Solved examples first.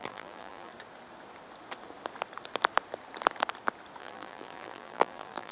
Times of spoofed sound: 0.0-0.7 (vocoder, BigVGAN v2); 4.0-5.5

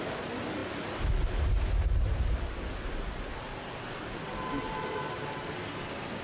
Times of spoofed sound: none